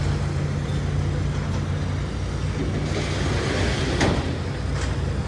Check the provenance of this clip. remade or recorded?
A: recorded